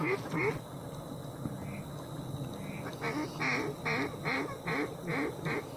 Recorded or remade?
recorded